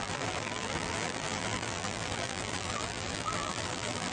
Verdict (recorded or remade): remade